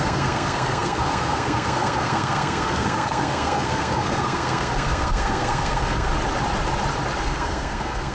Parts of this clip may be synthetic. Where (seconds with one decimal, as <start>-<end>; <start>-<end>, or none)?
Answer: 0.0-6.1; 7.2-8.1